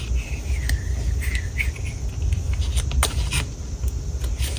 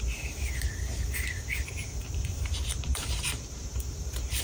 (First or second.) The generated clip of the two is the second